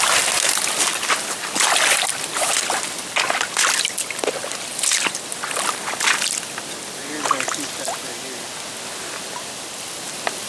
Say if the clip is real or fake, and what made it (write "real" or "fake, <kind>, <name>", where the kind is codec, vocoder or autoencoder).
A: real